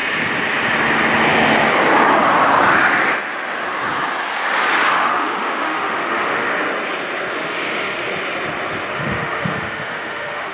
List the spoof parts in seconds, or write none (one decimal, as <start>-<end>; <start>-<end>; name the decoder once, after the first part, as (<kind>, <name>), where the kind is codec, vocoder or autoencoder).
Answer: 4.9-6.5 (autoencoder, DAC-VAE); 7.3-8.1; 8.9-10.5